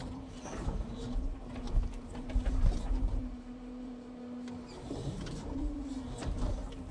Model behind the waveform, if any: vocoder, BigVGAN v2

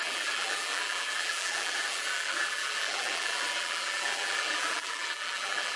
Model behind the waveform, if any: vocoder, BigVGAN v2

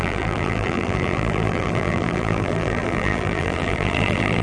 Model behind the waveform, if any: vocoder, BigVGAN v2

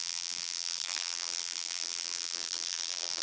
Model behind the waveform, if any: vocoder, BigVGAN v2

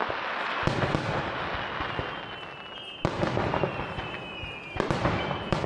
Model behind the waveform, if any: none